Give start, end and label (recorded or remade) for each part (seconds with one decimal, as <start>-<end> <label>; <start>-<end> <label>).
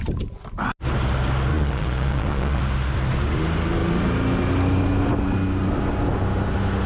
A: 0.0-1.5 recorded; 1.5-2.6 remade; 2.6-6.9 recorded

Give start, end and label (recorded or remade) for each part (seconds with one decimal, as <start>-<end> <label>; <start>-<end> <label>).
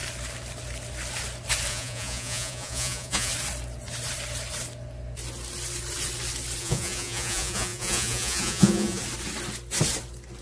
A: 0.0-1.7 recorded; 1.7-3.3 remade; 3.3-6.6 recorded; 6.6-9.0 remade; 9.0-10.4 recorded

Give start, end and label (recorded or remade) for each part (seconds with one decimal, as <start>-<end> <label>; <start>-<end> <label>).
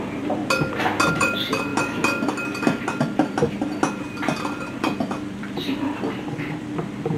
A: 0.0-0.4 remade; 0.4-1.1 recorded; 1.1-1.7 remade; 1.7-4.0 recorded; 4.0-7.2 remade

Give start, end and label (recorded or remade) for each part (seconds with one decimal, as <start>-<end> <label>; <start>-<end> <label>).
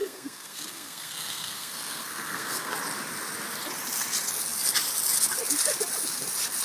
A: 0.0-2.7 remade; 2.7-6.6 recorded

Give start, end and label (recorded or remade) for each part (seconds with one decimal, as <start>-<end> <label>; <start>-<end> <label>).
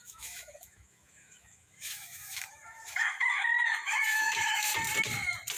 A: 0.0-4.7 remade; 4.7-5.6 recorded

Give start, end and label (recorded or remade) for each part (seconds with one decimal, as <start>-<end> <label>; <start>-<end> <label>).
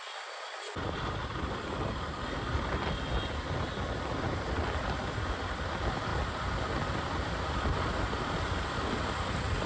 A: 0.0-9.7 recorded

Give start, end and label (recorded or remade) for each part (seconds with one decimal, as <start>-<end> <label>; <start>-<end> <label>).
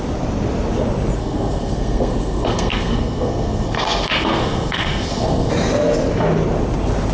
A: 0.0-1.2 recorded; 1.2-5.5 remade; 5.5-7.1 recorded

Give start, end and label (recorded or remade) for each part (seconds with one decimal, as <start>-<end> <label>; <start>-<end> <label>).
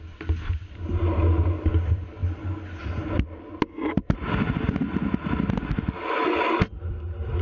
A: 0.0-7.4 recorded